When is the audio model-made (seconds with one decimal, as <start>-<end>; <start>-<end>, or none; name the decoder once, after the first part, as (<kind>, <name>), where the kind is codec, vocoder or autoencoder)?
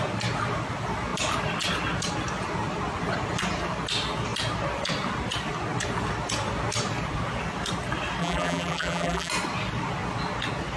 8.2-9.3 (vocoder, BigVGAN v2)